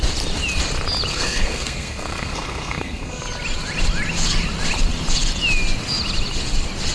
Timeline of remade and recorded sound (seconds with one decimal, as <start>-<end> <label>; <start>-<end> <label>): 0.0-1.1 recorded; 1.1-3.2 remade; 3.2-6.9 recorded